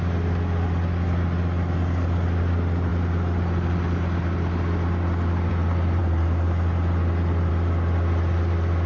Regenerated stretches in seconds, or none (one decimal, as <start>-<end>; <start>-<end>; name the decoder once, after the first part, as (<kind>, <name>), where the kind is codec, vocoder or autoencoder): none